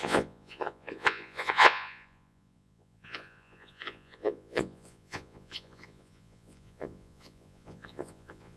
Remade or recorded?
remade